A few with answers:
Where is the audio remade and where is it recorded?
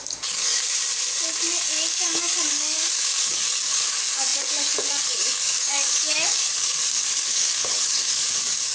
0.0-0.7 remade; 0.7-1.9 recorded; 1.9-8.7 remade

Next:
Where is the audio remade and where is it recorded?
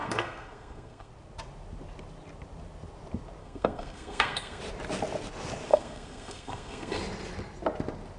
0.0-1.1 remade; 1.1-3.4 recorded; 3.4-4.6 remade; 4.6-5.7 recorded; 5.7-7.0 remade; 7.0-8.2 recorded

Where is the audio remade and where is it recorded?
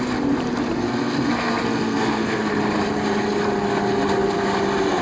0.0-0.8 recorded; 0.8-2.5 remade; 2.5-5.0 recorded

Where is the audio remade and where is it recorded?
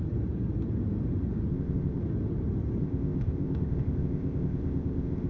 0.0-1.5 recorded; 1.5-2.0 remade; 2.0-2.8 recorded; 2.8-5.3 remade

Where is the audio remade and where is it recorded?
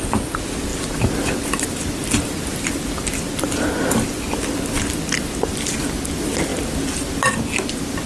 0.0-0.7 recorded; 0.7-5.3 remade; 5.3-6.5 recorded; 6.5-7.3 remade; 7.3-8.1 recorded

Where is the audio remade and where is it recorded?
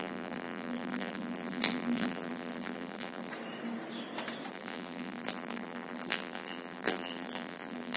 0.0-3.3 remade; 3.3-4.5 recorded; 4.5-8.0 remade